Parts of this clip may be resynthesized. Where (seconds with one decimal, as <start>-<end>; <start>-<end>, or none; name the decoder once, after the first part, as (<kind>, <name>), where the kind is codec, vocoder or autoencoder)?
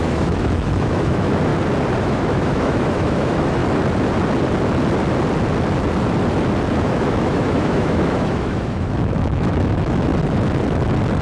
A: 0.0-1.5 (autoencoder, DAC-VAE); 2.0-3.6; 6.8-10.1